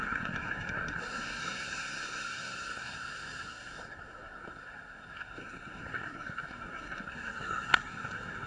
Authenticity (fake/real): fake